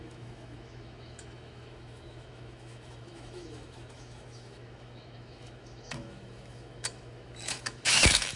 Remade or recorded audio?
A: remade